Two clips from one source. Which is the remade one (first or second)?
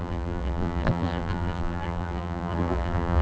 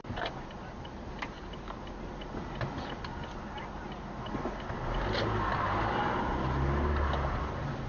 first